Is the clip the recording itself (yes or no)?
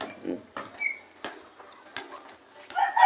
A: yes